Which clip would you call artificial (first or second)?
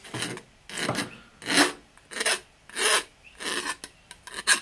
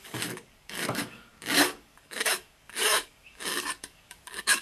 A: second